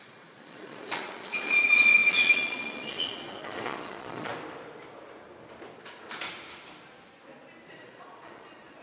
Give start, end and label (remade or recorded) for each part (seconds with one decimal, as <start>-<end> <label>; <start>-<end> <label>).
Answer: 0.0-4.3 remade; 4.3-7.8 recorded; 7.8-8.8 remade